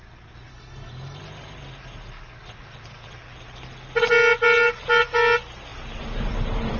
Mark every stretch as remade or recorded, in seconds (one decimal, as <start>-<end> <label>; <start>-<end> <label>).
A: 0.0-0.5 recorded; 0.5-1.2 remade; 1.2-6.8 recorded